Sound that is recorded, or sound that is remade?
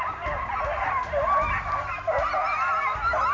recorded